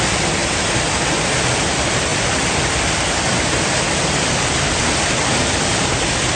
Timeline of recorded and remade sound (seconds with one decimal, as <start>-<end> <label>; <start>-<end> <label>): 0.0-0.4 recorded; 0.4-1.4 remade; 1.4-2.1 recorded; 2.1-5.9 remade; 5.9-6.4 recorded